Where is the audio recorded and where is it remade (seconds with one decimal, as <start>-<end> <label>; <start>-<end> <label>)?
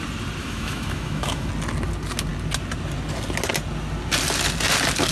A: 0.0-0.4 recorded; 0.4-1.5 remade; 1.5-5.1 recorded